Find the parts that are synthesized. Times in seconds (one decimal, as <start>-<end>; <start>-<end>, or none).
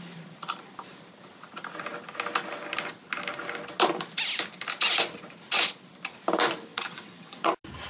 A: 6.7-7.5